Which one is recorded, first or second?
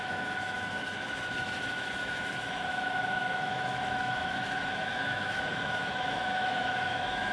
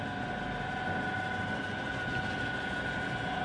second